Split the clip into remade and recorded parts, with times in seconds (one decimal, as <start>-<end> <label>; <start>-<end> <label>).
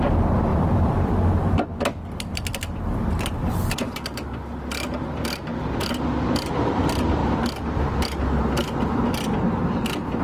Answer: 0.0-0.5 recorded; 0.5-5.0 remade; 5.0-10.2 recorded